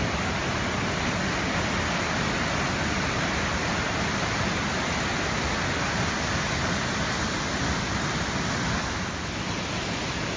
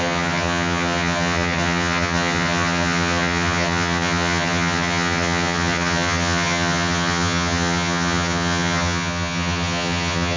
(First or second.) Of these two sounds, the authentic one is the first